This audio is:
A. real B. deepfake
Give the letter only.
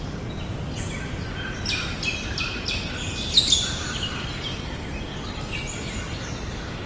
A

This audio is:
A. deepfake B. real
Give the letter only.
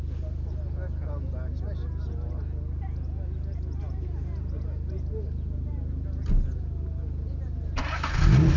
B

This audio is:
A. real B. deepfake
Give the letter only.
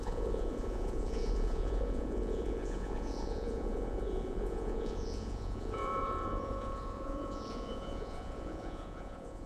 B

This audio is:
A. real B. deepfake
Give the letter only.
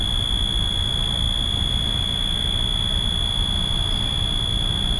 A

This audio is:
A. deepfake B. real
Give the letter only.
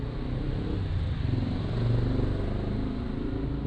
B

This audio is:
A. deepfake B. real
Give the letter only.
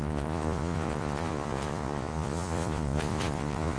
A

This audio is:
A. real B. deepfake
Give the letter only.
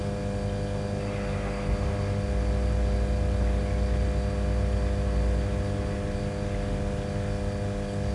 A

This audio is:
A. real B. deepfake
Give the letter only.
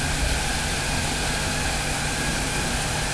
A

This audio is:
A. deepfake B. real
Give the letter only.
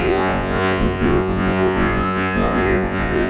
A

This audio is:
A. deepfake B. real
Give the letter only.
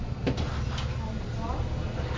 B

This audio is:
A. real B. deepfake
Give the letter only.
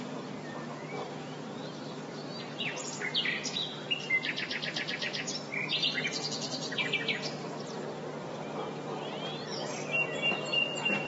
A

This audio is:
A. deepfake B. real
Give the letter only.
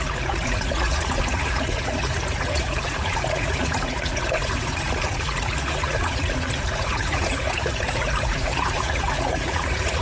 A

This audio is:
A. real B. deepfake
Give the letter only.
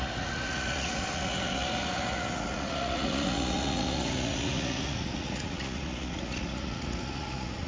B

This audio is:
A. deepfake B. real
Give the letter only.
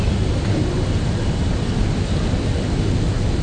B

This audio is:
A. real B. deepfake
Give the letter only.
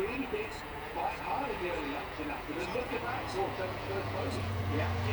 B